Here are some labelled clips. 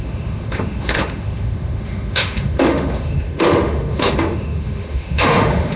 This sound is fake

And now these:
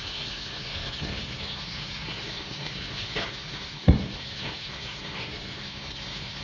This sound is fake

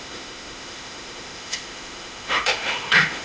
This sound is fake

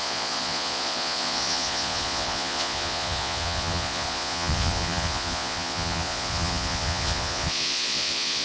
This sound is fake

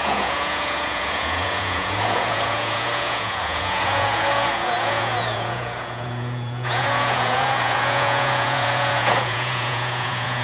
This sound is fake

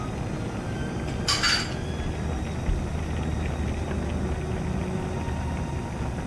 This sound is real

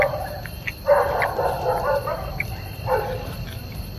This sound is real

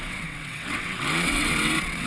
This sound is fake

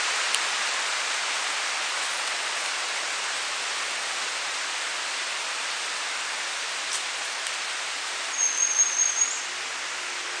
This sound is real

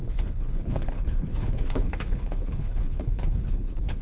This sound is fake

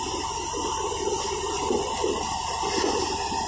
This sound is real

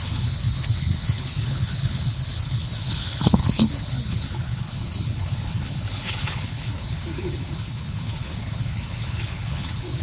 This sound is fake